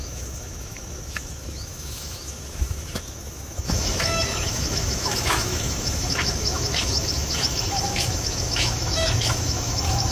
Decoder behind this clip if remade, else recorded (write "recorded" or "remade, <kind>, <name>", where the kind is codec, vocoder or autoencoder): remade, autoencoder, DAC-VAE